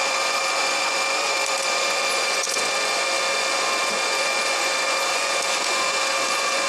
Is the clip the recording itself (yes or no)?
no